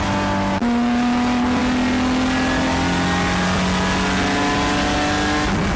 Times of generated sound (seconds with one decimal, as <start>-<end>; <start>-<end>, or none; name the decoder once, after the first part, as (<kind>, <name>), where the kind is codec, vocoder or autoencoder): none